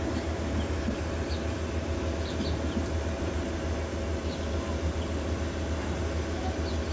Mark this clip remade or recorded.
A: recorded